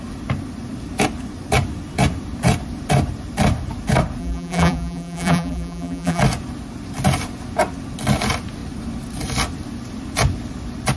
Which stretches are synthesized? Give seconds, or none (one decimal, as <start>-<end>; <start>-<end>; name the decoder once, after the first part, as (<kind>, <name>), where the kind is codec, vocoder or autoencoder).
4.2-6.2 (vocoder, BigVGAN v2)